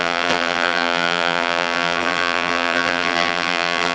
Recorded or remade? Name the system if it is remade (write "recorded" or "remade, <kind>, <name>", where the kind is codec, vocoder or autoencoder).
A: remade, vocoder, BigVGAN v2